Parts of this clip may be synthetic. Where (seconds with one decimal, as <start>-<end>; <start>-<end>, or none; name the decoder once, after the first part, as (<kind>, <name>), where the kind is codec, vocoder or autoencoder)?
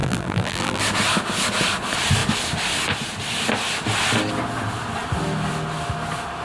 0.0-0.8 (vocoder, BigVGAN v2)